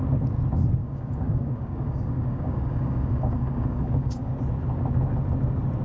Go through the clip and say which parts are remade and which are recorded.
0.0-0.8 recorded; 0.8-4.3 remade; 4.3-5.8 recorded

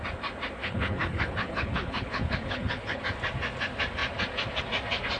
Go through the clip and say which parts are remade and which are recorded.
0.0-0.6 recorded; 0.6-3.0 remade; 3.0-5.2 recorded

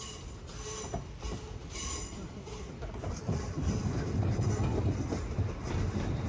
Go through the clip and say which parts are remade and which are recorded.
0.0-1.6 recorded; 1.6-3.9 remade; 3.9-6.3 recorded